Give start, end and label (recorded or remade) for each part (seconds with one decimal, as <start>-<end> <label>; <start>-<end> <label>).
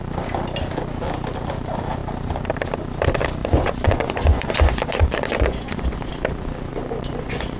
0.0-3.4 recorded; 3.4-6.1 remade; 6.1-6.7 recorded; 6.7-7.6 remade